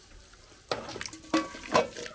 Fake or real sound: real